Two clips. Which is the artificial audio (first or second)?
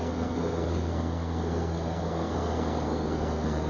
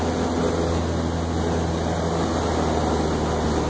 first